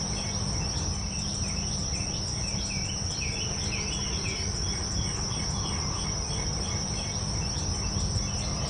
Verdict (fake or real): real